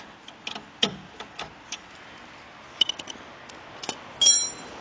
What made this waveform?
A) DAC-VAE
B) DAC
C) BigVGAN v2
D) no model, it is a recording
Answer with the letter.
D